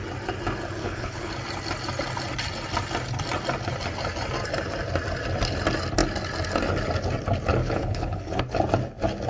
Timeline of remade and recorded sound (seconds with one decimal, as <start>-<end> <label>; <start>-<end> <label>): 0.0-0.8 recorded; 0.8-1.3 remade; 1.3-7.6 recorded; 7.6-8.4 remade; 8.4-9.3 recorded